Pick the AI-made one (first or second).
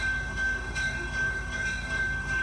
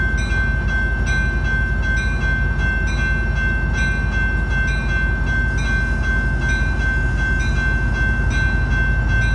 first